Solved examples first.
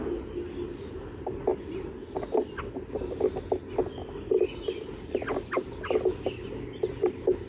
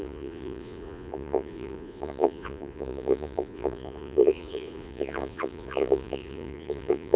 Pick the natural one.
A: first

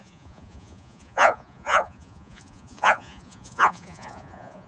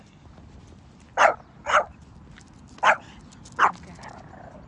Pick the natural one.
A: second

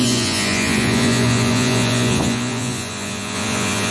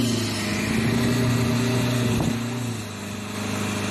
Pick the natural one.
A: second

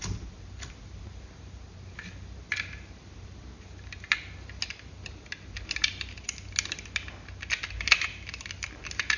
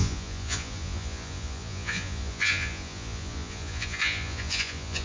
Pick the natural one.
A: first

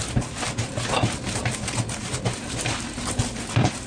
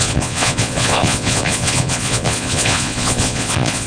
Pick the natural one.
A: first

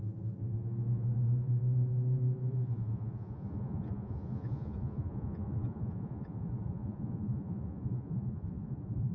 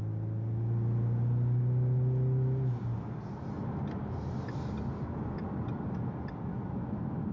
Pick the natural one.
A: second